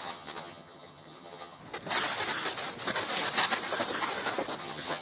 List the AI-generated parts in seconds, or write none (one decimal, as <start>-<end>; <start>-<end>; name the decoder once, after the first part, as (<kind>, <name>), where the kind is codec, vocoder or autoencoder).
0.0-1.6 (vocoder, HiFi-GAN); 4.6-5.0